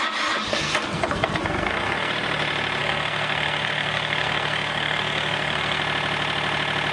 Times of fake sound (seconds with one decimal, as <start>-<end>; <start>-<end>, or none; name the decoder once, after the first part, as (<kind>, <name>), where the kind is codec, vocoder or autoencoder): 0.5-2.1 (codec, SNAC); 2.8-5.8